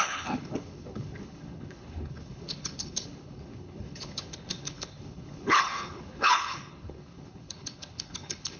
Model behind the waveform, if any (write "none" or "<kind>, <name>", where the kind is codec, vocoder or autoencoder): codec, HILCodec